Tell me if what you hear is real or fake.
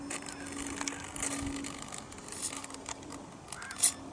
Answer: real